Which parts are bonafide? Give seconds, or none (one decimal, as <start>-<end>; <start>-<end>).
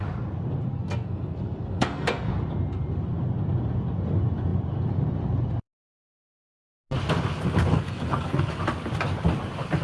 0.0-0.7; 2.3-7.7; 8.5-9.8